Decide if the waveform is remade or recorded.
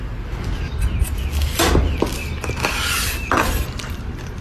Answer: recorded